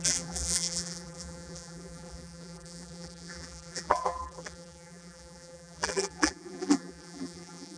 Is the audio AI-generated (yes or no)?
yes